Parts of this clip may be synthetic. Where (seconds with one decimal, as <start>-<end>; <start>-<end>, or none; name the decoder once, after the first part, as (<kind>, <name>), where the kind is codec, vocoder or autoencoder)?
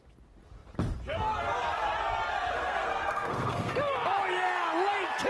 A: 2.5-3.7 (codec, SNAC)